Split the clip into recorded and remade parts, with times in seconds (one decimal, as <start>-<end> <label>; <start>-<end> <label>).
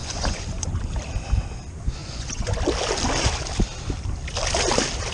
0.0-0.8 remade; 0.8-2.0 recorded; 2.0-2.5 remade; 2.5-5.1 recorded